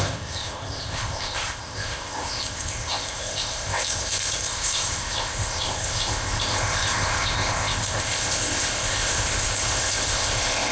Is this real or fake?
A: fake